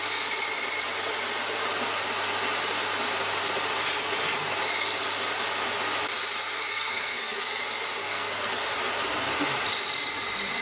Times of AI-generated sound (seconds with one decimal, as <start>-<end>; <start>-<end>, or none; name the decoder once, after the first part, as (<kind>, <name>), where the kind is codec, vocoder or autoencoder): 6.7-7.6 (codec, SNAC); 8.0-8.5